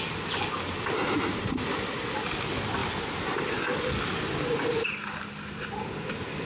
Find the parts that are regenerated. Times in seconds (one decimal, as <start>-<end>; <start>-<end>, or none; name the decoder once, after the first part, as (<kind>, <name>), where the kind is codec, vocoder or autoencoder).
none